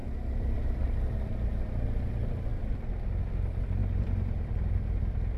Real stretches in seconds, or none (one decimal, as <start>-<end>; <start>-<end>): 0.0-3.8; 5.0-5.4

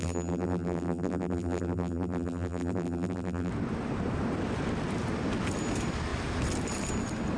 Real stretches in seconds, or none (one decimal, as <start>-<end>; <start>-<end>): 3.5-7.4

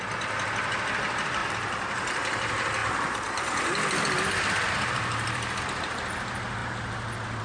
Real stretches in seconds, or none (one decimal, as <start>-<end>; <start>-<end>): 0.0-1.4; 1.9-2.8; 5.6-7.4

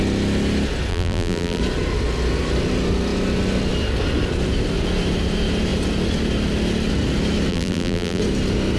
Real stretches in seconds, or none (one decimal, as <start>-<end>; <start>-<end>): 0.0-0.9; 1.6-7.5; 8.2-8.8

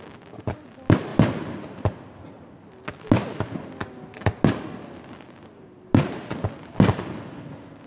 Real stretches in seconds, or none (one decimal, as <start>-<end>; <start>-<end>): 0.0-7.9

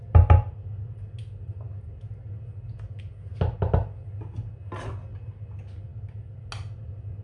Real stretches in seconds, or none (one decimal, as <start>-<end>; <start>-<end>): 0.0-7.2

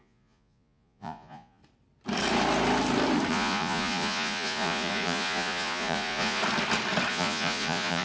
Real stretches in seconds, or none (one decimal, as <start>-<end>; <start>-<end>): 1.6-3.3; 6.4-7.1